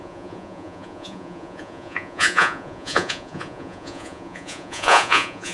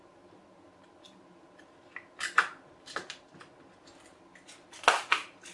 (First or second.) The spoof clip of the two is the first